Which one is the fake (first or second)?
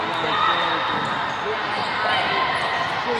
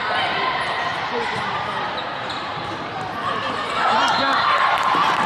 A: second